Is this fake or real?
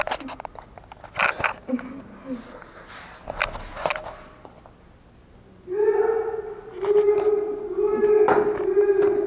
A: real